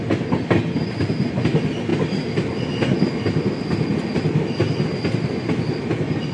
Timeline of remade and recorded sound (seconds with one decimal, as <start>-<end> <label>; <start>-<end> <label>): 0.0-6.3 recorded